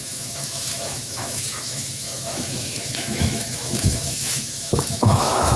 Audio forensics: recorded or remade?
remade